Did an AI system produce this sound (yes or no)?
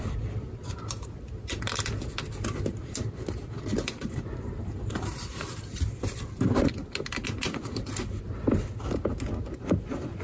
no